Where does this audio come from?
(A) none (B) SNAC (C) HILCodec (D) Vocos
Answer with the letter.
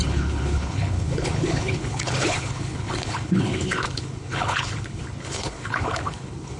C